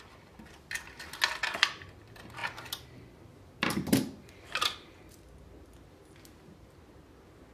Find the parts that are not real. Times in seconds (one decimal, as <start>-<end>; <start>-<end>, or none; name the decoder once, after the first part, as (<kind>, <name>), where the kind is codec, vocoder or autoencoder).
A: 2.4-5.0 (vocoder, BigVGAN v2)

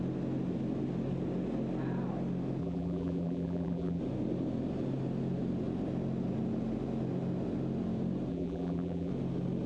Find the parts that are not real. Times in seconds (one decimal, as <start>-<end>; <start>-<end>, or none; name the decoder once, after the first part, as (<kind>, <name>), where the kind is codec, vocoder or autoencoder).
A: 2.6-4.0 (vocoder, BigVGAN v2); 8.3-9.1

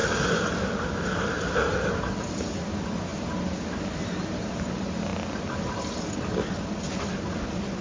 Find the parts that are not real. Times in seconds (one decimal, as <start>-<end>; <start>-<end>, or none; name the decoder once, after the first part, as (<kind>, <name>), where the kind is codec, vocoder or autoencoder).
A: none

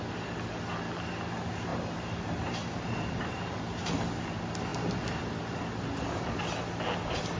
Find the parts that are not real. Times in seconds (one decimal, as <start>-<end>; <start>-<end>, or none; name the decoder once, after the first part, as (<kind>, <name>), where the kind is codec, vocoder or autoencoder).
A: 1.7-3.9 (vocoder, BigVGAN v2)

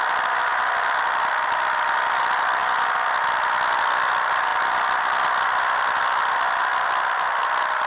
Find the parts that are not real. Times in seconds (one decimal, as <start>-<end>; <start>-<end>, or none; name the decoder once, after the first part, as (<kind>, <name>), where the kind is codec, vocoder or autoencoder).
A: 0.0-0.5 (vocoder, BigVGAN v2); 2.1-2.6; 3.8-7.9